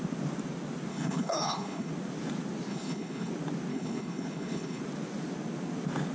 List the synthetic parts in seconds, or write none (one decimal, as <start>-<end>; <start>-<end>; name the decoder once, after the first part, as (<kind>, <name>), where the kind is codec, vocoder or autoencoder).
0.9-1.9 (codec, HILCodec); 2.7-3.3; 3.7-4.8